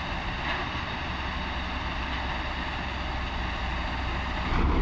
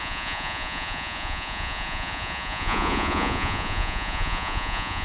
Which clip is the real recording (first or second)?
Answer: first